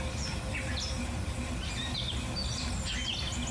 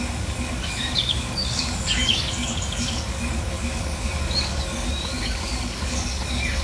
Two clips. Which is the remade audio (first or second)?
second